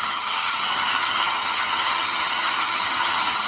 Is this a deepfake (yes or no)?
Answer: yes